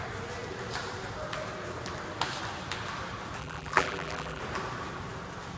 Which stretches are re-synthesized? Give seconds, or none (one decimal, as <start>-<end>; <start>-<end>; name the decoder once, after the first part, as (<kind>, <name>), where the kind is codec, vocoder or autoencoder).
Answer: 3.4-4.4 (vocoder, BigVGAN v2)